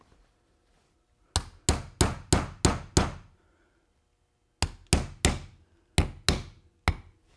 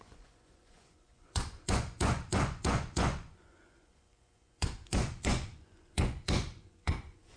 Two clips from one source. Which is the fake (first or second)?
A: second